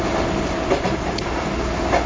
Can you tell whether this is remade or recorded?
recorded